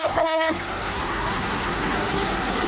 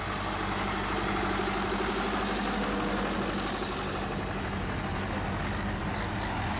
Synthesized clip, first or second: first